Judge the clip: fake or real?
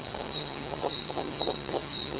fake